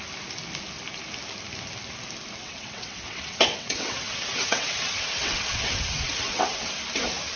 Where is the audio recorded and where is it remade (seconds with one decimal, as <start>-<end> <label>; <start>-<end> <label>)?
0.0-2.4 recorded; 2.4-6.8 remade; 6.8-7.4 recorded

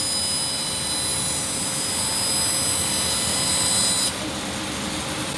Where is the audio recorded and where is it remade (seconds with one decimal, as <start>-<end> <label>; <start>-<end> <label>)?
0.0-5.4 recorded

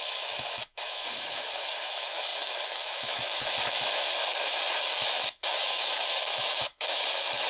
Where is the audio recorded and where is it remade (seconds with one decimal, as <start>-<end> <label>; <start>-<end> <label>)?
0.0-7.5 remade

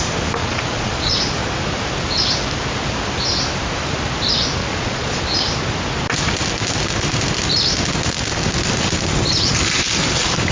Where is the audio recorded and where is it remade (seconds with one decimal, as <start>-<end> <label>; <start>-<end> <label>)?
0.0-0.4 recorded; 0.4-1.2 remade; 1.2-4.6 recorded; 4.6-5.2 remade; 5.2-10.5 recorded

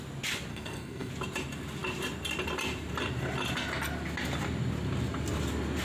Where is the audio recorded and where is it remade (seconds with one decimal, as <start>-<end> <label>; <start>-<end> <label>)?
0.0-0.5 recorded; 0.5-1.1 remade; 1.1-5.8 recorded

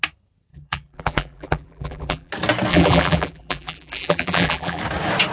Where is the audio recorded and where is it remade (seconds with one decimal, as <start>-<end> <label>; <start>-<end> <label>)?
0.0-0.5 recorded; 0.5-2.3 remade; 2.3-2.7 recorded; 2.7-4.8 remade; 4.8-5.3 recorded

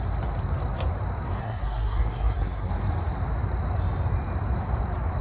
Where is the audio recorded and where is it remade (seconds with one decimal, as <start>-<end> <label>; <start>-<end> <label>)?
0.0-1.4 recorded; 1.4-2.7 remade; 2.7-5.2 recorded